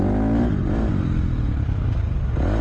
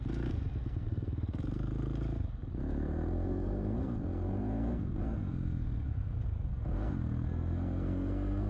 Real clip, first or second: first